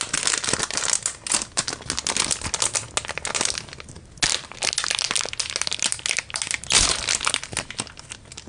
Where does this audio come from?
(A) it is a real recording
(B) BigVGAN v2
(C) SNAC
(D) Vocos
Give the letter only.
A